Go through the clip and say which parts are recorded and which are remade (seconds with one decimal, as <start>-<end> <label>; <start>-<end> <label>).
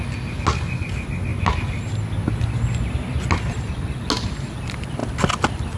0.0-5.8 recorded